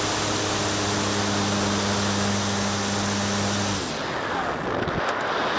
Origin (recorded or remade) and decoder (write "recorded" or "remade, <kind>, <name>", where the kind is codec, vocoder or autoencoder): recorded